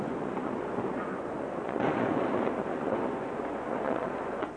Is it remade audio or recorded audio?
remade